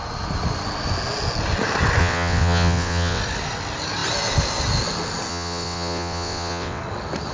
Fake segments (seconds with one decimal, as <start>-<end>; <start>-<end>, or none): 2.0-3.2; 5.3-6.8